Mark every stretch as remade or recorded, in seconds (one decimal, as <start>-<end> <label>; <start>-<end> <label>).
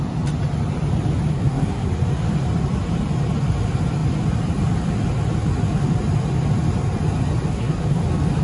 0.0-1.3 recorded; 1.3-1.9 remade; 1.9-7.5 recorded; 7.5-8.0 remade; 8.0-8.4 recorded